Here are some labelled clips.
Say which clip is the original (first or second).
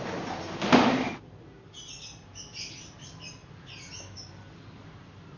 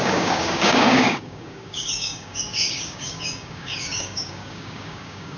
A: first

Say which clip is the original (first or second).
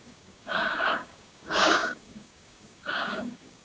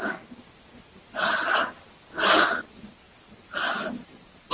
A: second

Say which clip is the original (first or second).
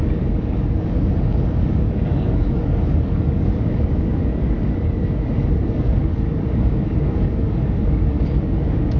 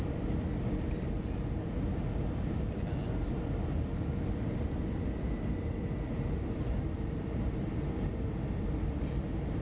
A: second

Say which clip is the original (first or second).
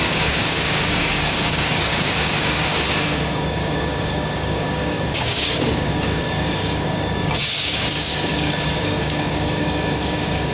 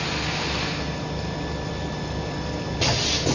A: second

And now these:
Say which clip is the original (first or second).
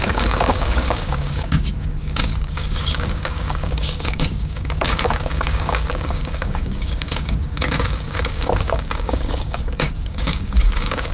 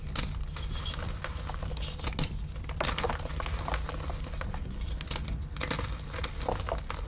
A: second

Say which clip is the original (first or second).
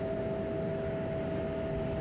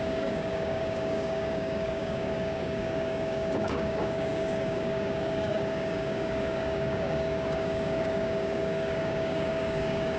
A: first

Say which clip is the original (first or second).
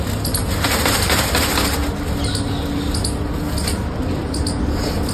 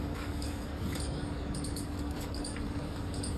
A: first